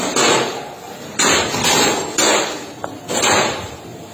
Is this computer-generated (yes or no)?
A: no